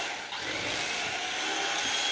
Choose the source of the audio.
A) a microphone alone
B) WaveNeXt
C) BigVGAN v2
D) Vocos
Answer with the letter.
A